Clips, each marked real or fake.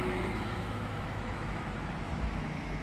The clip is fake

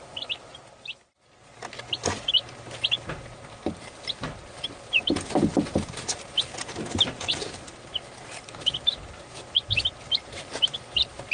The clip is real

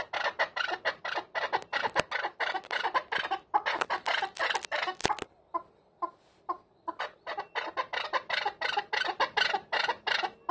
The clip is real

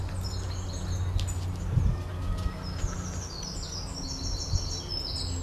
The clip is real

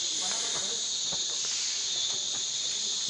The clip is real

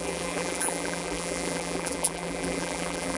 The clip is fake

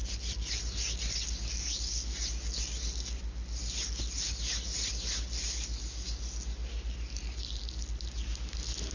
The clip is real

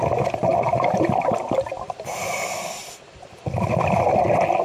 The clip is real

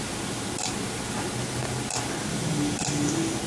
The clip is real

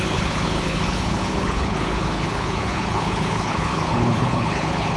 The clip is fake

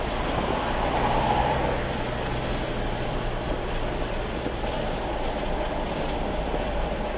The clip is real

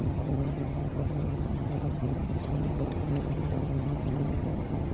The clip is fake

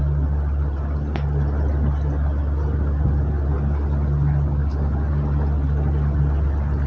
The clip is real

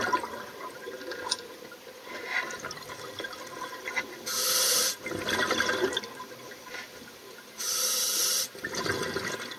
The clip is real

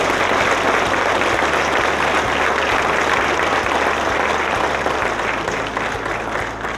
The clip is real